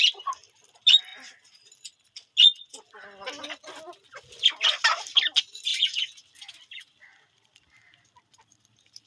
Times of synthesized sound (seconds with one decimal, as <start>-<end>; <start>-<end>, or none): none